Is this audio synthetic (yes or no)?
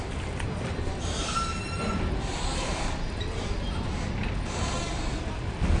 no